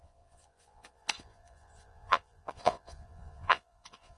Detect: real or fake fake